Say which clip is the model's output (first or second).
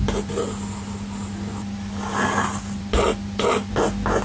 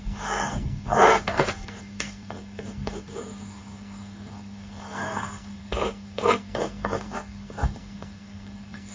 second